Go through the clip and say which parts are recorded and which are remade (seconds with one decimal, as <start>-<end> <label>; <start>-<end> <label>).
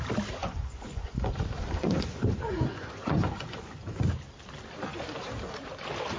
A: 0.0-0.4 recorded; 0.4-4.1 remade; 4.1-6.2 recorded